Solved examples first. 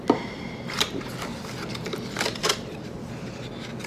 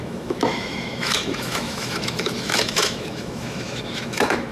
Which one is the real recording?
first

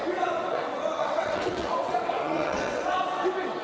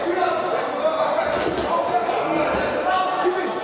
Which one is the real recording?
second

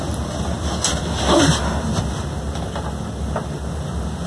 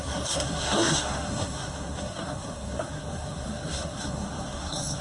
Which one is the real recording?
first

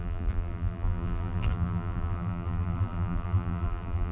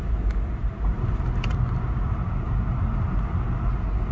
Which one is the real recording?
second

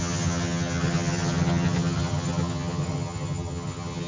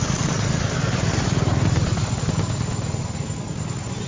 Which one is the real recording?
second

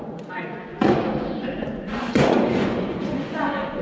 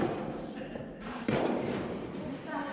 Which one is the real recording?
second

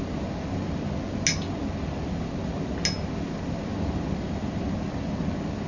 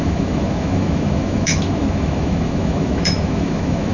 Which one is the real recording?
first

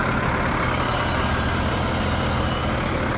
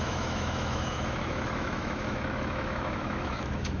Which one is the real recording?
first